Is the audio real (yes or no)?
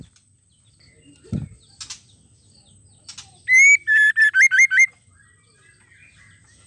yes